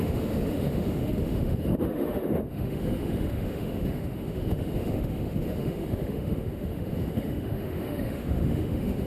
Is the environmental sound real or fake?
fake